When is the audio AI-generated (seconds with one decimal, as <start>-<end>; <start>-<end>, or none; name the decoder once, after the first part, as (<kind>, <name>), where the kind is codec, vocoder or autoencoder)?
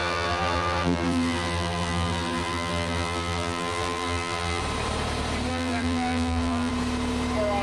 0.0-4.6 (vocoder, BigVGAN v2); 5.5-6.7